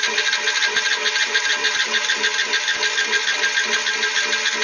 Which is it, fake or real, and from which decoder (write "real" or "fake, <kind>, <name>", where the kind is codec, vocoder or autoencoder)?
real